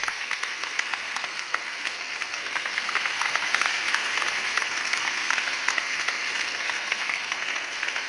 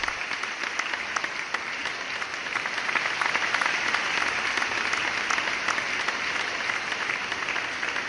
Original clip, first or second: second